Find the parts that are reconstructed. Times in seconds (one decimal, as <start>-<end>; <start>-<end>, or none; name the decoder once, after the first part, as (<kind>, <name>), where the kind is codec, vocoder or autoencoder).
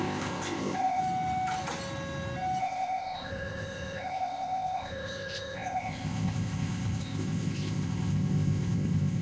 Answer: 0.0-1.0 (codec, ZipCodec); 2.6-9.2